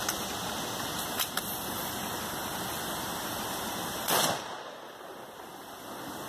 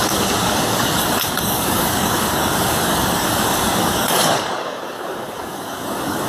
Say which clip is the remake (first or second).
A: second